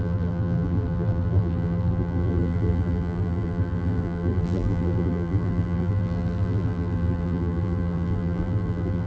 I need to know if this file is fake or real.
fake